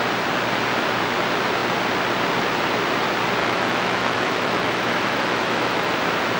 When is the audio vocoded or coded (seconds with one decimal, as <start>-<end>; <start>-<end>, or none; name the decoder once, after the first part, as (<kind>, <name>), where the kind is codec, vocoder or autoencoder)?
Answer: 3.4-5.9 (autoencoder, DAC-VAE)